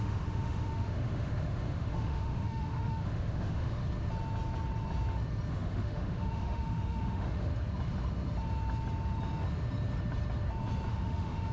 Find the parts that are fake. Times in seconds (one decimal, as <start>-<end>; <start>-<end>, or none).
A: 0.0-3.8; 5.5-7.5; 10.9-11.5